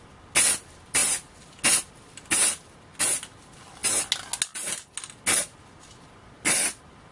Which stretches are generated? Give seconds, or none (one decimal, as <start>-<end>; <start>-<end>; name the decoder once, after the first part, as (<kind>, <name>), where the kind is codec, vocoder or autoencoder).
none